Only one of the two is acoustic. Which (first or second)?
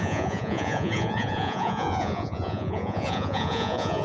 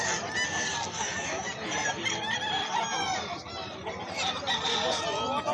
second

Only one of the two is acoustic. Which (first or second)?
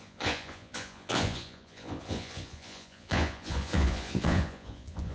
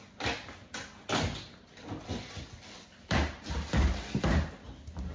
second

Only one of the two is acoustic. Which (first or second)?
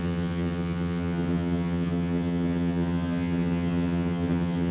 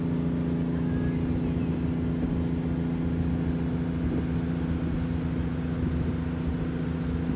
second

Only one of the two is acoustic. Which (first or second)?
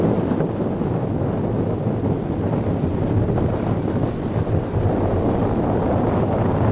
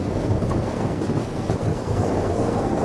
first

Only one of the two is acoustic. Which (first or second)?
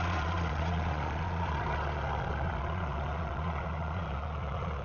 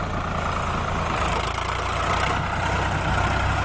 second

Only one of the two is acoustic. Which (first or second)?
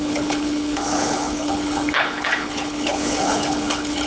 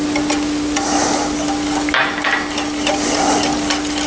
second